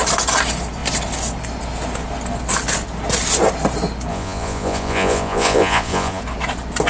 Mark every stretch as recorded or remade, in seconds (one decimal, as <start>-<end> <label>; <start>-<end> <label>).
0.0-4.1 recorded; 4.1-6.2 remade; 6.2-6.9 recorded